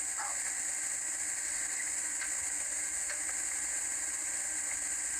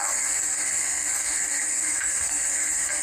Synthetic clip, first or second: second